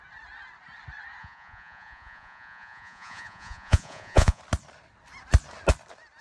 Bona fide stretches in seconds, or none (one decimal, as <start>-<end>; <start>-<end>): 0.0-1.2; 4.4-6.2